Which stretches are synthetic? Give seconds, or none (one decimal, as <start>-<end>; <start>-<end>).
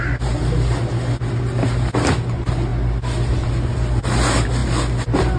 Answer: none